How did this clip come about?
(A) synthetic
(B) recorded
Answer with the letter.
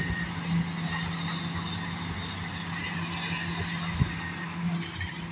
B